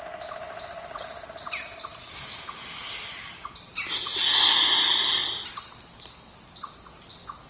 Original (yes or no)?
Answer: yes